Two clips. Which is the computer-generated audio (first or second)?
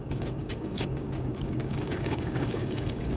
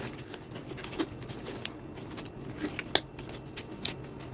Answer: first